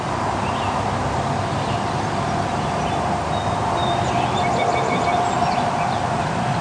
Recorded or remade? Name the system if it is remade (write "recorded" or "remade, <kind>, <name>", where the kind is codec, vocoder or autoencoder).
recorded